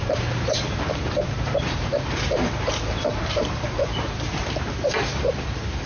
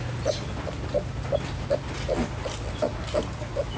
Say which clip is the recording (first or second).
second